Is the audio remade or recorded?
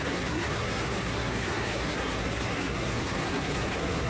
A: remade